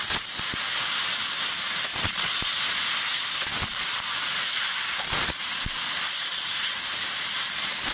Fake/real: real